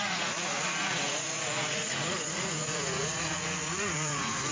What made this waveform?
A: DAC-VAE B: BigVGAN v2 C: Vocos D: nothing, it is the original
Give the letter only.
C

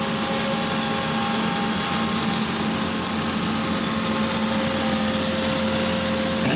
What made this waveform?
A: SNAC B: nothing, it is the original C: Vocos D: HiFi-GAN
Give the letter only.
B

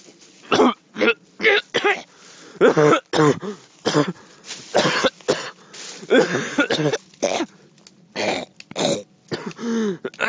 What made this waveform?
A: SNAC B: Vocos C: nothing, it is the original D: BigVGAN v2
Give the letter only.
C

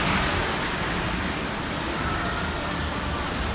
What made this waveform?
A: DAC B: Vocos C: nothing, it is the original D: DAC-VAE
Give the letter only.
C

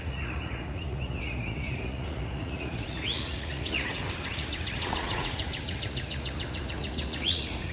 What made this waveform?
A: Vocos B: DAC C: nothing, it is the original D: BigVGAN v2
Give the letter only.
A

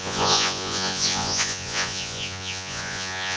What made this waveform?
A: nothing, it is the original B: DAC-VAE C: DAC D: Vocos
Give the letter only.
D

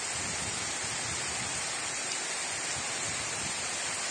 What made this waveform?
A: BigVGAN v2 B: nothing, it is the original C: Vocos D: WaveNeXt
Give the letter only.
B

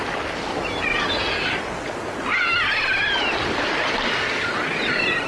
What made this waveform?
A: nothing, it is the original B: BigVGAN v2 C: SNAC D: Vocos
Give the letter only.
A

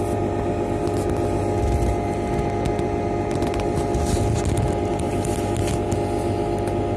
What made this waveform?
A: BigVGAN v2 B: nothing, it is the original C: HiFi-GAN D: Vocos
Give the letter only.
B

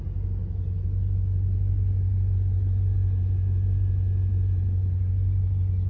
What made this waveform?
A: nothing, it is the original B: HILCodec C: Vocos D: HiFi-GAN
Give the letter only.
A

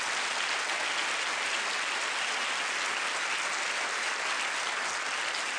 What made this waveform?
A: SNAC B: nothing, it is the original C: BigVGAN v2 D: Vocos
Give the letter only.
B